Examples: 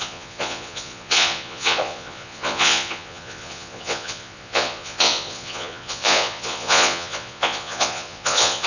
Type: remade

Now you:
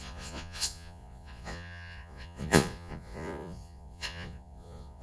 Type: remade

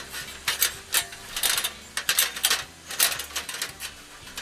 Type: recorded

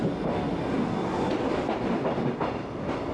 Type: recorded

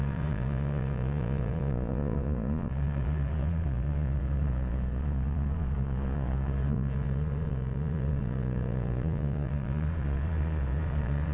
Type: remade